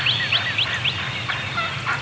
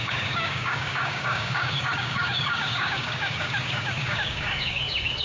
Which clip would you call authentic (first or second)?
first